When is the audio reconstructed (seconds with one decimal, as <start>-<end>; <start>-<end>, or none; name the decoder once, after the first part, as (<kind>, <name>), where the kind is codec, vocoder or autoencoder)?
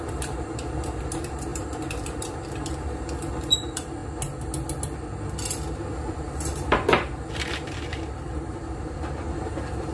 0.0-4.0 (vocoder, BigVGAN v2); 6.1-9.9